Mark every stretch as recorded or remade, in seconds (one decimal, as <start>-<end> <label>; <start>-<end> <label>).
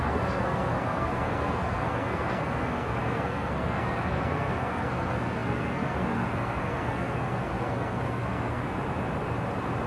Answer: 0.0-8.6 remade; 8.6-9.9 recorded